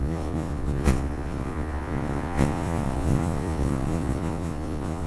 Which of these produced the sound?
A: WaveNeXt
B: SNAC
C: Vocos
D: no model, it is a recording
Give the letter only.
C